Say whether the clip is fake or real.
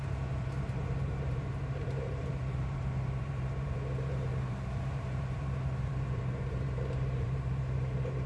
fake